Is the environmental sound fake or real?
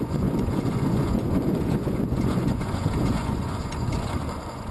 fake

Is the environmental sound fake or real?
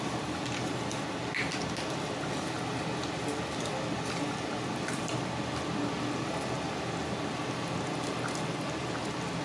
real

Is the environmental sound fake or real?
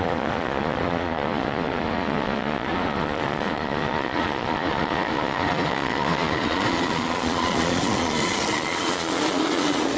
fake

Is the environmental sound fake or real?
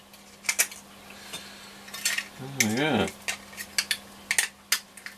real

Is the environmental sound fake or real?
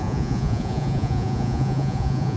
fake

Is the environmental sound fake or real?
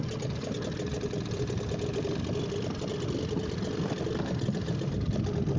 real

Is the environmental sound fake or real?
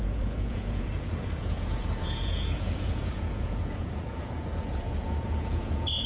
fake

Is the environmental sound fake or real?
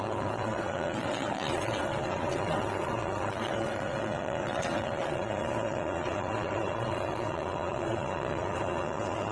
fake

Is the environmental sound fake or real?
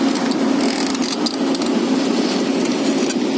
real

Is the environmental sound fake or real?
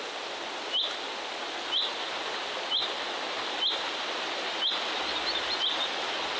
real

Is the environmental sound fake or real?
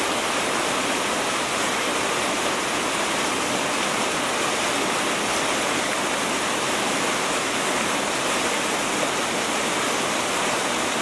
real